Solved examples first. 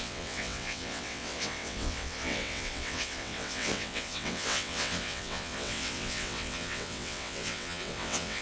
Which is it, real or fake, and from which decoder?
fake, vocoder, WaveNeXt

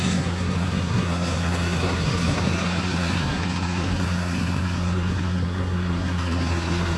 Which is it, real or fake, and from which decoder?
fake, codec, SNAC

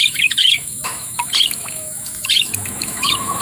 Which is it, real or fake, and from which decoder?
fake, autoencoder, DAC-VAE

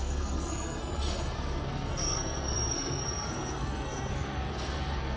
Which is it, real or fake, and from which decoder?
fake, codec, SNAC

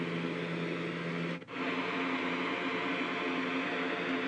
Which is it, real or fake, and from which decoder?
real